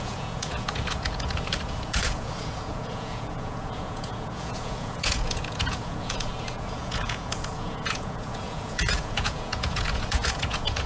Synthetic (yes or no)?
yes